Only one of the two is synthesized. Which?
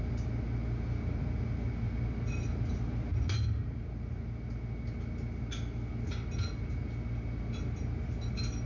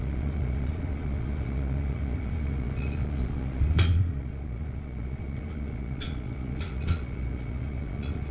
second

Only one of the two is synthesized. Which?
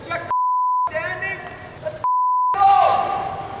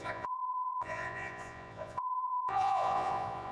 second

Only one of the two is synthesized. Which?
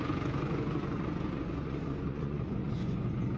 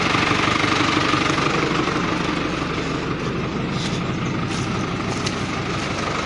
first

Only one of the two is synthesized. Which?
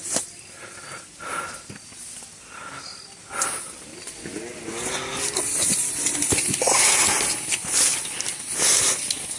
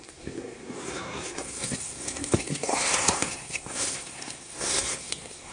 second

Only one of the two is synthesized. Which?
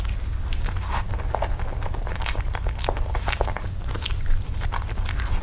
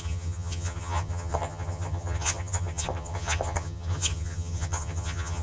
second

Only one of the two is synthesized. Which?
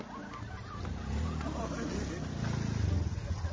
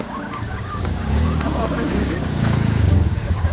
second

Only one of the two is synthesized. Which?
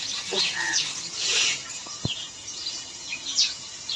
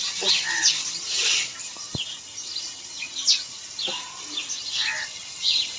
first